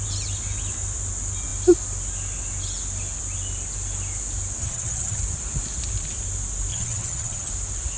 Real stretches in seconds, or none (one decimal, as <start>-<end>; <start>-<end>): 0.0-4.6; 5.2-6.7; 7.5-8.0